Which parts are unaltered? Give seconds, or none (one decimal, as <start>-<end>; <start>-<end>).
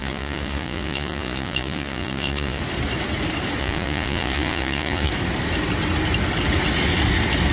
2.6-3.6; 5.1-7.5